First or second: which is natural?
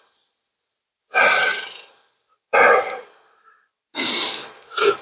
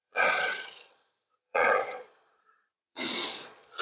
first